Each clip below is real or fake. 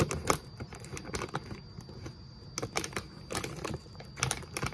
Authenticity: real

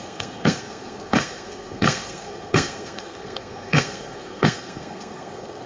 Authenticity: fake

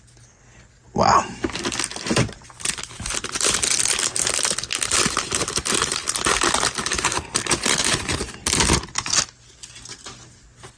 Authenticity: real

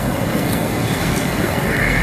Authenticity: fake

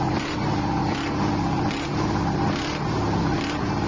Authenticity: real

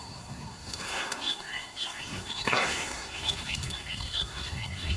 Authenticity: fake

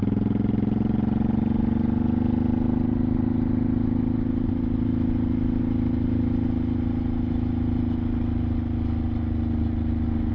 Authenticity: real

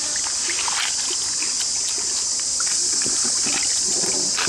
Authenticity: real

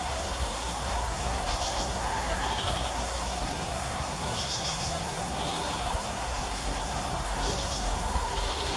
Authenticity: fake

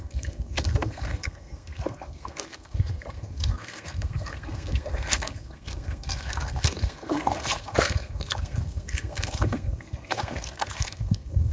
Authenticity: fake